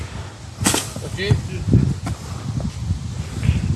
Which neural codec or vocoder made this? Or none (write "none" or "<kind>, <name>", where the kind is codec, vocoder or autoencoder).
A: none